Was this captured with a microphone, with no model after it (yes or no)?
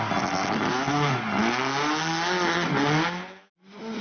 yes